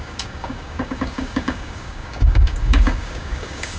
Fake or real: fake